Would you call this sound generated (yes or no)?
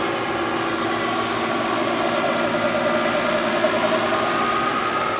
no